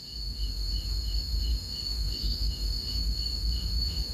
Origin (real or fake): fake